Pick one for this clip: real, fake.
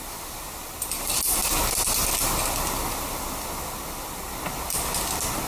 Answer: real